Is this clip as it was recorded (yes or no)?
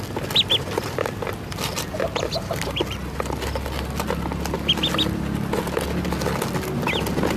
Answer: yes